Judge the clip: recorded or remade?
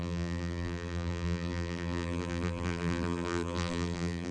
remade